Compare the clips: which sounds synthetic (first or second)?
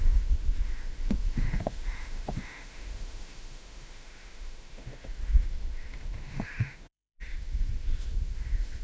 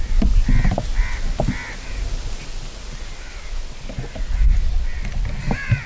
first